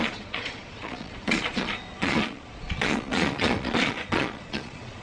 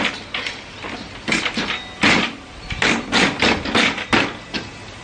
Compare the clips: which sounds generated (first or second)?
first